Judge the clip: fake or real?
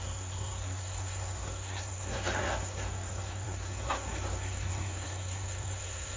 fake